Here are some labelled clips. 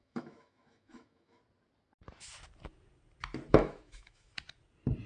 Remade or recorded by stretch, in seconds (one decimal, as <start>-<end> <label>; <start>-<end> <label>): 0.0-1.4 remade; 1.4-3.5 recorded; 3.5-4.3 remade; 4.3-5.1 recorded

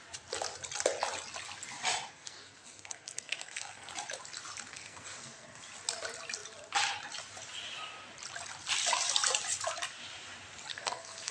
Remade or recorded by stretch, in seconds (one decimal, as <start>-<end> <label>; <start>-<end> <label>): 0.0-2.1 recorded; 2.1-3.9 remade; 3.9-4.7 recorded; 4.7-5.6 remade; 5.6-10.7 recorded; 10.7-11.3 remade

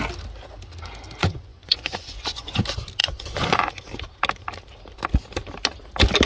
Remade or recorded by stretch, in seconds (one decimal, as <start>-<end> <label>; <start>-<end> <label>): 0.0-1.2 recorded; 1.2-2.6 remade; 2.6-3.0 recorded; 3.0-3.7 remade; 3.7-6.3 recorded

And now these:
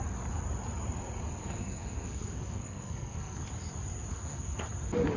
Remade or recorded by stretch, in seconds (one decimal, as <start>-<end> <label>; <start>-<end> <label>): 0.0-1.4 recorded; 1.4-3.5 remade; 3.5-4.1 recorded; 4.1-4.6 remade; 4.6-5.2 recorded

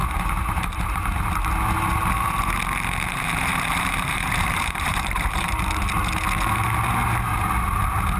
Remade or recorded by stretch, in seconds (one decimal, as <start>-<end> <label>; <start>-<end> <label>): 0.0-1.0 remade; 1.0-3.1 recorded; 3.1-5.6 remade; 5.6-8.2 recorded

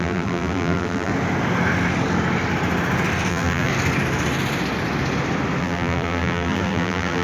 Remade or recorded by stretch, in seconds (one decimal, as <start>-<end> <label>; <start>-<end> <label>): 0.0-1.1 remade; 1.1-3.3 recorded; 3.3-3.7 remade; 3.7-5.6 recorded; 5.6-7.2 remade

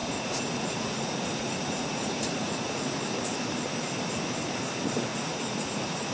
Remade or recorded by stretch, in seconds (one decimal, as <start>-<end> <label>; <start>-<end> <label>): 0.0-3.0 remade; 3.0-5.1 recorded; 5.1-6.1 remade